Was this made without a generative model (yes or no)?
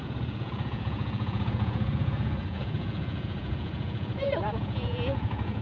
no